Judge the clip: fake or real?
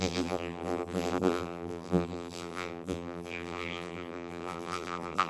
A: fake